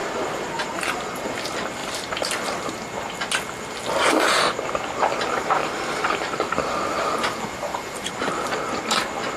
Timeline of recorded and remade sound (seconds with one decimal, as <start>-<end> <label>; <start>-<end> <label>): 0.0-1.0 remade; 1.0-5.6 recorded; 5.6-8.1 remade; 8.1-9.4 recorded